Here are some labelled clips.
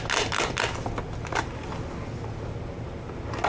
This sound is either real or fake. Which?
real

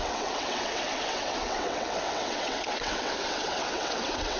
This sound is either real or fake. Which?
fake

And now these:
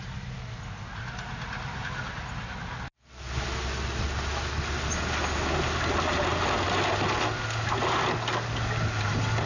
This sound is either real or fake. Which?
real